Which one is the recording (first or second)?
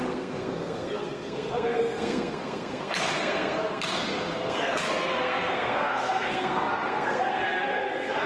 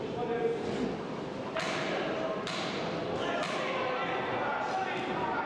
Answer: second